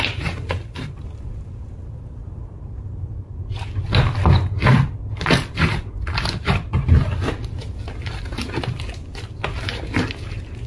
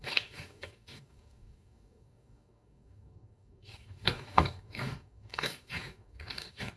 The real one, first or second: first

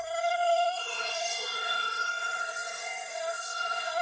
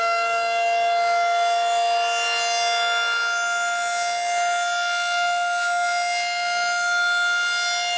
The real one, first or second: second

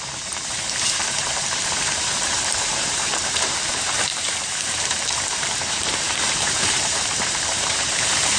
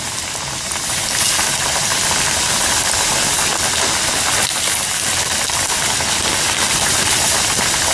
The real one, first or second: second